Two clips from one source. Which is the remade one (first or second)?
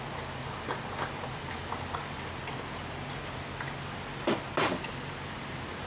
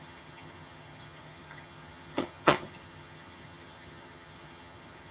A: second